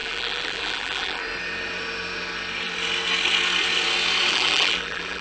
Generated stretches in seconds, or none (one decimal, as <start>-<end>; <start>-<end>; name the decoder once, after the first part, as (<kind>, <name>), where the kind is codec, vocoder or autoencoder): 0.0-1.2 (vocoder, BigVGAN v2); 4.3-5.2